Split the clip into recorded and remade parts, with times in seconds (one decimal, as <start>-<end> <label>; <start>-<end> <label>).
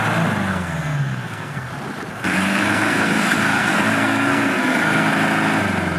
0.0-0.5 recorded; 0.5-1.7 remade; 1.7-2.1 recorded; 2.1-5.1 remade; 5.1-6.0 recorded